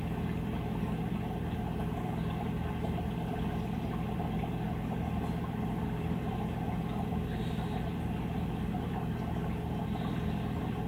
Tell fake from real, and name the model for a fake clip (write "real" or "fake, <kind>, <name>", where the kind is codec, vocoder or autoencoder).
real